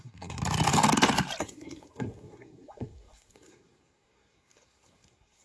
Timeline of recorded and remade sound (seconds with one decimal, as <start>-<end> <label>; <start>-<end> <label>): 0.0-0.4 remade; 0.4-1.4 recorded; 1.4-5.4 remade